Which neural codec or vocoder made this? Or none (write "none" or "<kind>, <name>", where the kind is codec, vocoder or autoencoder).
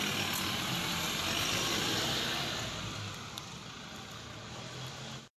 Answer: none